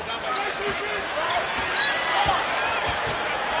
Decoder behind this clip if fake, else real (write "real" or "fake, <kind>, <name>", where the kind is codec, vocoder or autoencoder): real